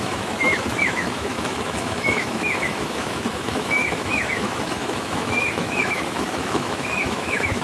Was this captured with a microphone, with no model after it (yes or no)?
no